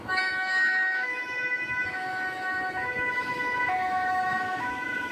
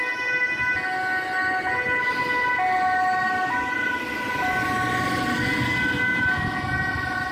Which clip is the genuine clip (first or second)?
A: second